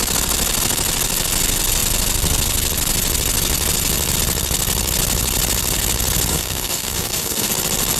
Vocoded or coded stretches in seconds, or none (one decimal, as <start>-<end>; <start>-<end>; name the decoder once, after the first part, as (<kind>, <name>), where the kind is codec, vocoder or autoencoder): 6.3-7.5 (codec, DAC)